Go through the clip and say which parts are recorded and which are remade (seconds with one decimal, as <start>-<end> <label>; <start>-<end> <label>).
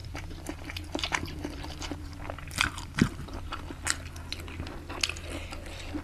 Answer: 0.0-3.6 remade; 3.6-6.0 recorded